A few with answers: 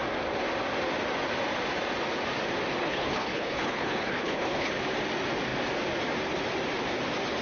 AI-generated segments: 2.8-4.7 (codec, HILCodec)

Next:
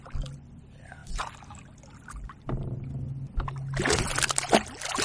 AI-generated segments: none

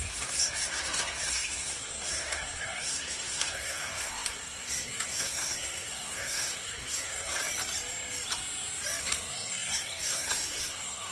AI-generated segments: 0.0-7.4 (codec, SNAC); 9.0-11.1

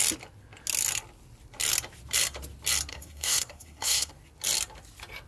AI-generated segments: 2.9-4.1 (codec, SNAC)

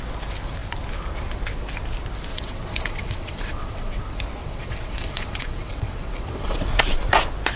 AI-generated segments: 2.3-4.0 (vocoder, WaveNeXt); 4.4-6.7

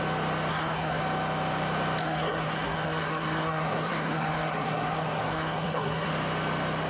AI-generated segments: 0.5-1.0 (codec, SNAC); 2.0-6.1

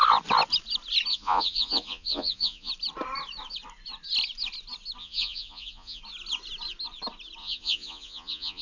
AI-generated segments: 1.1-2.7 (vocoder, Vocos); 5.0-6.0; 7.4-8.6